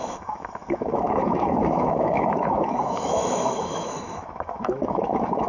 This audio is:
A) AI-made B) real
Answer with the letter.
A